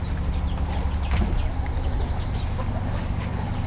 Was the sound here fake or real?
real